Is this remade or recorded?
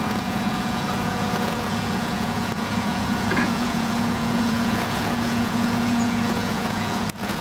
remade